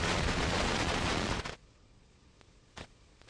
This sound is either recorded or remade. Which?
remade